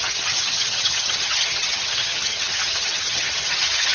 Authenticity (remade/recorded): remade